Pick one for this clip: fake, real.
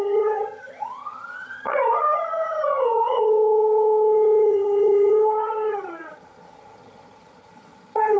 fake